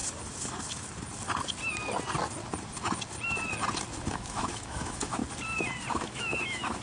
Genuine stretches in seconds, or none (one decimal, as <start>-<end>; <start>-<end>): 0.0-4.1; 5.2-5.9